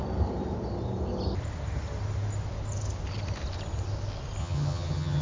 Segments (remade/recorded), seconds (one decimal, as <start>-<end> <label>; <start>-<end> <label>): 0.0-4.4 recorded; 4.4-5.2 remade